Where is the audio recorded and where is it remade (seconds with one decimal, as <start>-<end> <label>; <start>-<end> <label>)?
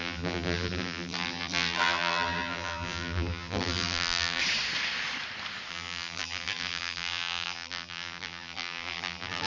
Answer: 0.0-4.4 remade; 4.4-5.7 recorded; 5.7-9.5 remade